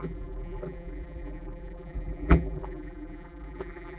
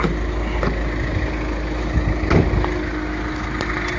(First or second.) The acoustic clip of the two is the second